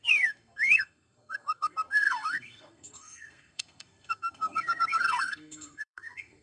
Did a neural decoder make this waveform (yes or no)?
yes